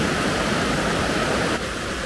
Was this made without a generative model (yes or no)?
yes